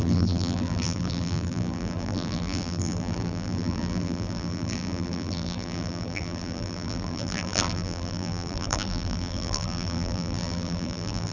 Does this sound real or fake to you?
fake